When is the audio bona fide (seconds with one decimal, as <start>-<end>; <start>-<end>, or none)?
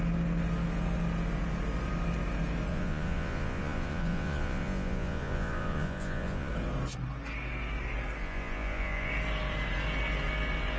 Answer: 0.0-2.7; 6.5-8.2; 9.1-10.8